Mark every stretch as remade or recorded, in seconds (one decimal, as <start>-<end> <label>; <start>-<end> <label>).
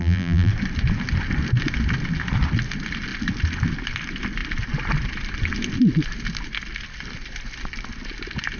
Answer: 0.0-0.5 remade; 0.5-8.6 recorded